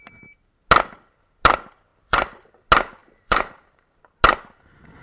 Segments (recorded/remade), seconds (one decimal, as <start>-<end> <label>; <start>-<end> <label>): 0.0-1.9 recorded; 1.9-2.5 remade; 2.5-3.0 recorded; 3.0-4.0 remade; 4.0-5.0 recorded